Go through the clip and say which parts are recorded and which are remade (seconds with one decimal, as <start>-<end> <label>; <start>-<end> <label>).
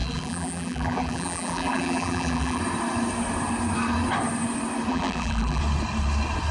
0.0-2.6 remade; 2.6-4.9 recorded; 4.9-5.6 remade; 5.6-6.5 recorded